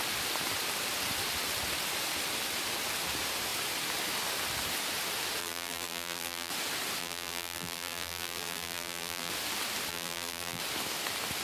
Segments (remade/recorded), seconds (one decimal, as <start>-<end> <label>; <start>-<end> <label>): 0.0-5.4 recorded; 5.4-6.5 remade; 6.5-7.0 recorded; 7.0-9.3 remade; 9.3-9.9 recorded; 9.9-10.6 remade; 10.6-11.4 recorded